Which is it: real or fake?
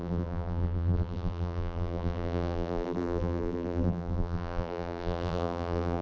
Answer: fake